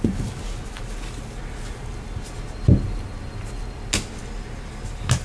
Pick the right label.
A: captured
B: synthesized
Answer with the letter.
A